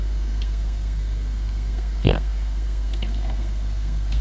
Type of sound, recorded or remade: remade